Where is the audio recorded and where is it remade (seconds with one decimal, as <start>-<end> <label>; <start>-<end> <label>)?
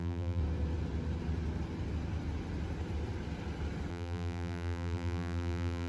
0.0-0.4 remade; 0.4-3.9 recorded; 3.9-5.9 remade